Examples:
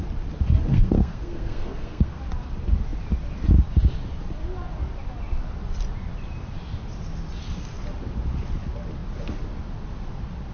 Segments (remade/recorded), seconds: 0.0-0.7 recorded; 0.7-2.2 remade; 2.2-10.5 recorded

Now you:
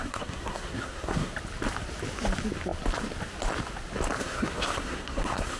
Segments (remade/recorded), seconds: 0.0-1.3 remade; 1.3-4.2 recorded; 4.2-5.6 remade

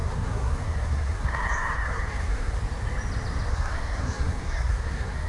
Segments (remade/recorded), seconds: 0.0-2.6 remade; 2.6-3.5 recorded; 3.5-5.3 remade